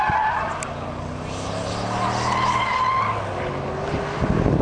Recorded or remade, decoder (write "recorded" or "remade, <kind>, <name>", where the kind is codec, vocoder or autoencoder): recorded